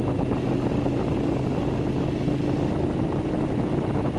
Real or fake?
real